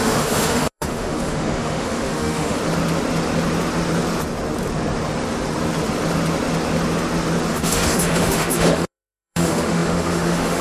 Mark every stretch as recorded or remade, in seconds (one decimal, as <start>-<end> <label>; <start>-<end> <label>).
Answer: 0.0-2.6 remade; 2.6-7.5 recorded; 7.5-10.6 remade